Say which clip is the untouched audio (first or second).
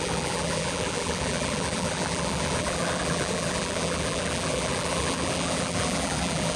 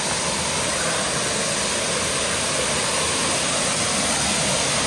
second